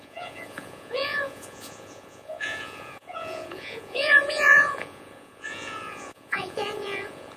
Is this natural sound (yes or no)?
no